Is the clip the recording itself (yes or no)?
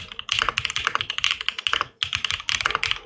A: yes